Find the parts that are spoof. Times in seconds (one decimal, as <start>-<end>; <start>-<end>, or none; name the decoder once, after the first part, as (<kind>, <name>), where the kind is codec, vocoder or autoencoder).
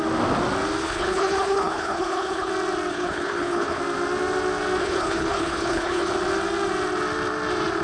0.8-2.5 (codec, HILCodec); 2.9-3.8; 4.8-6.1